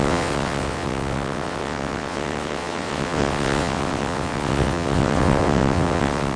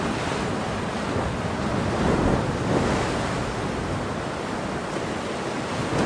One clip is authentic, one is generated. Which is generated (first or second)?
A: first